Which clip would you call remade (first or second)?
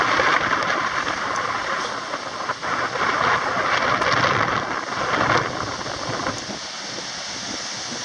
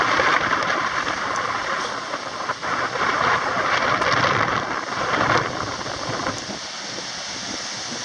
second